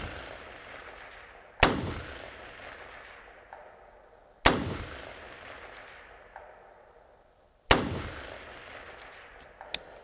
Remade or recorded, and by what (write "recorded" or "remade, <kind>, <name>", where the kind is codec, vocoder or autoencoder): recorded